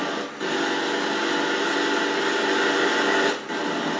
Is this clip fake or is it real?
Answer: real